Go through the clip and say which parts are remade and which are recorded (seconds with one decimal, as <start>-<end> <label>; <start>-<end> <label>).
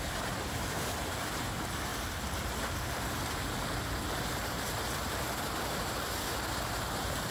0.0-1.9 remade; 1.9-2.7 recorded; 2.7-7.3 remade